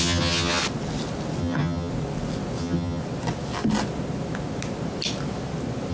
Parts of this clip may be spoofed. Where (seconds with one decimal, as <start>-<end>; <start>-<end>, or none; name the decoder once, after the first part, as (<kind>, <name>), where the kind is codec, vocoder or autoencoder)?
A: 0.0-0.6 (vocoder, HiFi-GAN); 1.4-1.9; 2.6-3.0